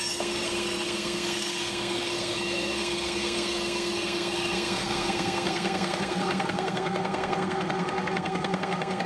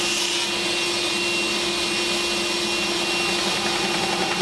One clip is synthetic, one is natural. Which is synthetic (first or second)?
first